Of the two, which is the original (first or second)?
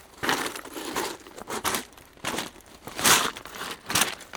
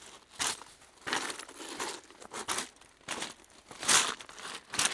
second